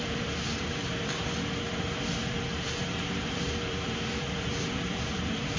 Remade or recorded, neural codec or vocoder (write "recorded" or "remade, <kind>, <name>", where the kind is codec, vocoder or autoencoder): remade, vocoder, BigVGAN v2